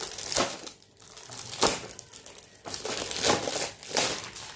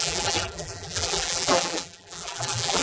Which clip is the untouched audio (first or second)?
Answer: first